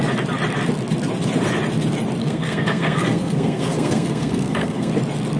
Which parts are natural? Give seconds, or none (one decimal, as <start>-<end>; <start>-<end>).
0.0-2.2; 4.9-5.4